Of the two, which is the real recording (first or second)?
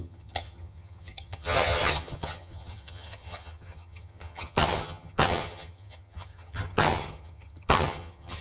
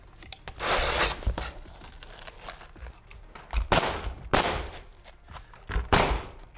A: second